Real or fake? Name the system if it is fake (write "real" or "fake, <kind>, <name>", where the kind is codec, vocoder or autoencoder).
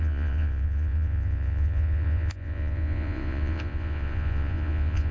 fake, vocoder, Vocos